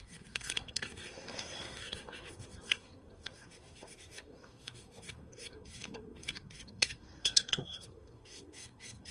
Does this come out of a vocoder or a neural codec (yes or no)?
yes